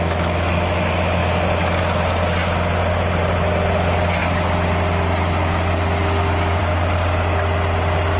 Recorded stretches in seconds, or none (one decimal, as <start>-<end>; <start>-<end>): 0.0-8.2